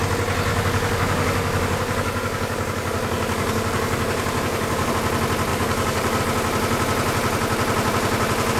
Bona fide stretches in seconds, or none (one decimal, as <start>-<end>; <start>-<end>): 0.0-0.5; 4.9-5.5; 6.2-8.6